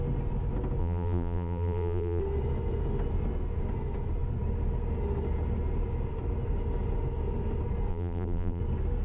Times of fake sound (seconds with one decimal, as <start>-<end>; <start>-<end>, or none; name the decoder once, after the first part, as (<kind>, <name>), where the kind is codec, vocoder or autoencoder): 0.8-2.2 (vocoder, BigVGAN v2); 7.9-8.6